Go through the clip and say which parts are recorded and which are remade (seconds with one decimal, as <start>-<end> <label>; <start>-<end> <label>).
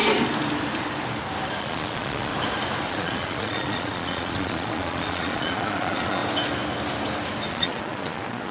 0.0-1.6 recorded; 1.6-2.3 remade; 2.3-2.9 recorded; 2.9-6.2 remade; 6.2-7.5 recorded; 7.5-8.5 remade